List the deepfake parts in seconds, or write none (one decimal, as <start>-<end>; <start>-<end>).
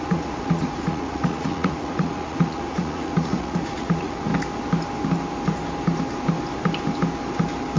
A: 0.0-4.3